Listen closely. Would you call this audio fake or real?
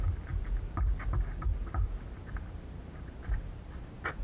real